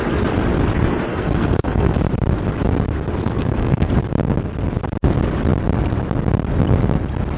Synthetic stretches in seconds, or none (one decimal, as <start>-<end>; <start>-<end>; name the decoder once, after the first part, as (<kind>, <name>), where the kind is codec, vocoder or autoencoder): 1.1-2.0 (codec, SNAC); 3.2-3.9